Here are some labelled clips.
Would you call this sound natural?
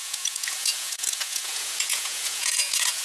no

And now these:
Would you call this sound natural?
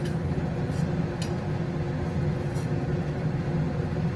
yes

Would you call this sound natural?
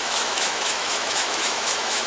no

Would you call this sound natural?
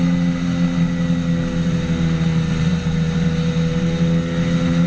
yes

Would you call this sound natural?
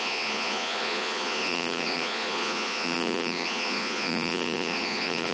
no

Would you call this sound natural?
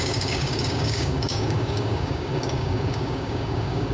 no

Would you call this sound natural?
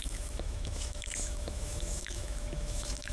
no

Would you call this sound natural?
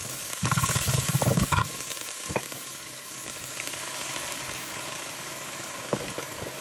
no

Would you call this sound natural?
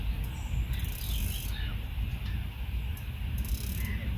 yes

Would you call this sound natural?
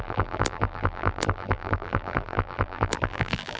no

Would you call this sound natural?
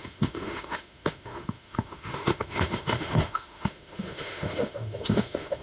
no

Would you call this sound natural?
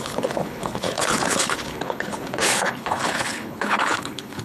no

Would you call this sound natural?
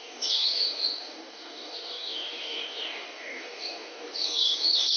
no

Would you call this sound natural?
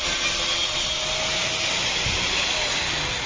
yes